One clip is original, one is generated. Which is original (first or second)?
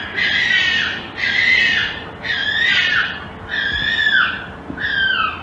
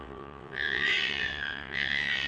first